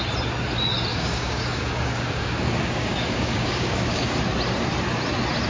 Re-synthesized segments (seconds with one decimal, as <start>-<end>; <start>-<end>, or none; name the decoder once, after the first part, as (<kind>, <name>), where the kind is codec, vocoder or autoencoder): 0.9-4.2 (codec, DAC)